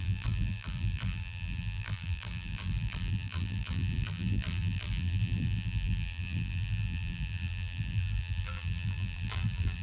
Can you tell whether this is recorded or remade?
remade